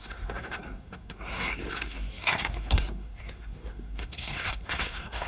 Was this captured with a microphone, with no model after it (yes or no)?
no